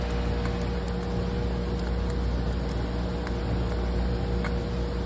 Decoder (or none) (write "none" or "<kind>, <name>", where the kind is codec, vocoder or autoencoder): none